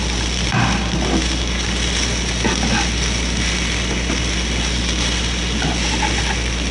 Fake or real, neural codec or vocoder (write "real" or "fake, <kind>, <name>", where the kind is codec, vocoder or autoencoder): real